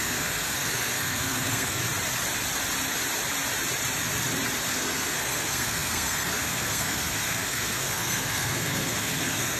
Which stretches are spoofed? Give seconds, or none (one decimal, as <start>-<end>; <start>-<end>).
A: 0.0-1.8; 4.7-9.6